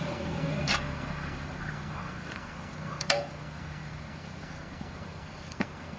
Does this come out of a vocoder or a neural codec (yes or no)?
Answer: yes